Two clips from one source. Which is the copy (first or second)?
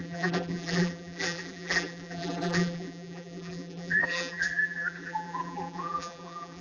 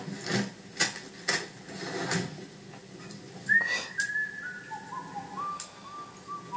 first